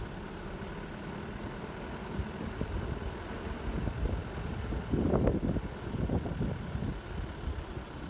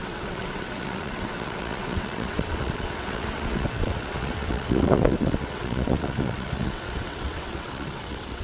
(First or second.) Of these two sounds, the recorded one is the first